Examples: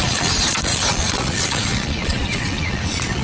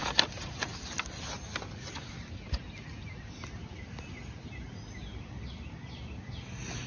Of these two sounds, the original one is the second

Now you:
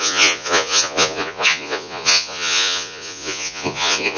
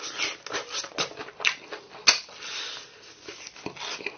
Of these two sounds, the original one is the second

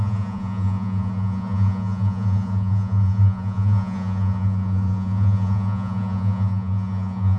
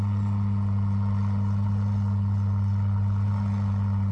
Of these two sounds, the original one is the second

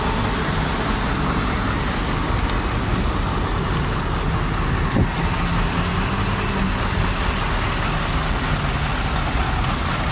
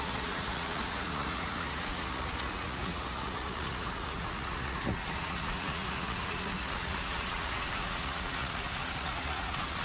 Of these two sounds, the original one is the first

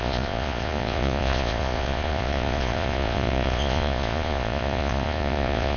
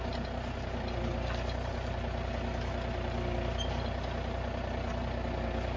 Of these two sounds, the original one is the second